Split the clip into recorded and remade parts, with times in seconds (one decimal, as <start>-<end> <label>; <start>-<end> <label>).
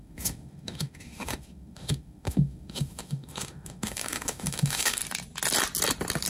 0.0-5.0 remade; 5.0-6.3 recorded